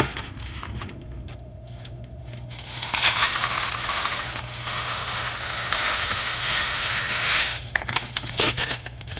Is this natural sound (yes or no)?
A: no